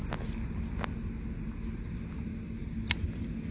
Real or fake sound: real